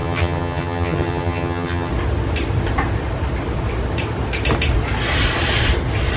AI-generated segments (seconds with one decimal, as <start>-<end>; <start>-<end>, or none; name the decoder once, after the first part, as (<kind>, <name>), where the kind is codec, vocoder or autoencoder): 0.0-1.9 (vocoder, HiFi-GAN)